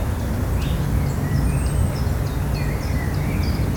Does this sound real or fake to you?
real